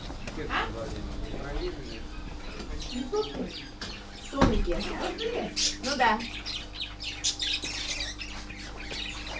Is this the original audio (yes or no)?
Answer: yes